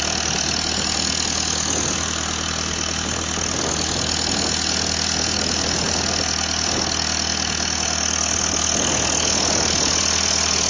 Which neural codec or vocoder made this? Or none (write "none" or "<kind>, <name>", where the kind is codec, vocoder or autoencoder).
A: none